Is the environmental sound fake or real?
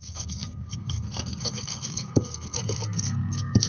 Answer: fake